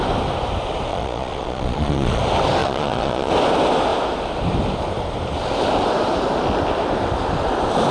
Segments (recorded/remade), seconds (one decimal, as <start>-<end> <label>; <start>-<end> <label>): 0.0-0.9 recorded; 0.9-2.2 remade; 2.2-2.6 recorded; 2.6-3.3 remade; 3.3-7.9 recorded